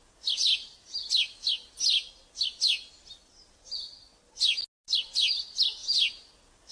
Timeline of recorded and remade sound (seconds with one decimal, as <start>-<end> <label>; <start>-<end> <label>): 0.0-6.7 recorded